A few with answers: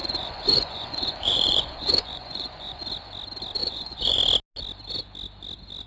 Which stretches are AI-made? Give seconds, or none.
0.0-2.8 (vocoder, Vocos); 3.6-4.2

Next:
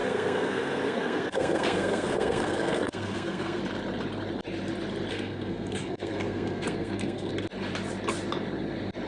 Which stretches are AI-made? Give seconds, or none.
0.0-3.6 (codec, SNAC); 5.1-7.3

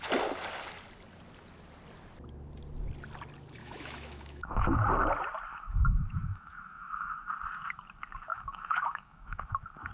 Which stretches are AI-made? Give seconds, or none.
3.6-4.9 (autoencoder, DAC-VAE); 5.5-7.3; 8.3-9.5

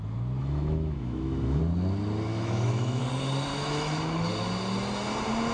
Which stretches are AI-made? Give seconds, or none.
0.4-1.6 (autoencoder, DAC-VAE); 2.3-3.0; 3.5-4.3

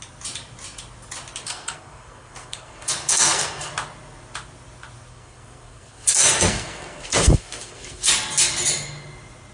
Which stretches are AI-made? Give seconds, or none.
1.4-3.7 (codec, SNAC); 5.1-8.1

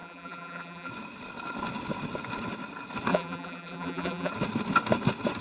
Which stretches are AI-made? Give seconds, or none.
0.0-0.9 (vocoder, BigVGAN v2); 3.1-4.3

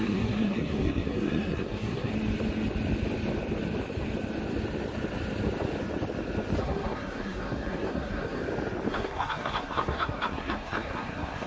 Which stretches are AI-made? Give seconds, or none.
0.0-2.1 (codec, SNAC); 6.6-8.4; 8.9-11.5

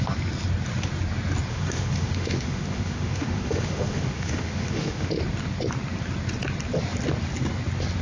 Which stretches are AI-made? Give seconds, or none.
1.5-5.1 (autoencoder, DAC-VAE)